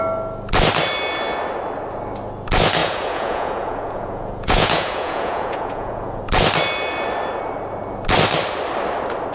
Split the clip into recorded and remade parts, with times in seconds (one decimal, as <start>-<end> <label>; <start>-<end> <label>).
0.0-2.8 recorded; 2.8-6.2 remade; 6.2-9.3 recorded